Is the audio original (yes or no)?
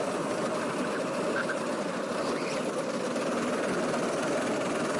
yes